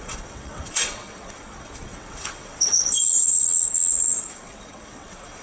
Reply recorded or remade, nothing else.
remade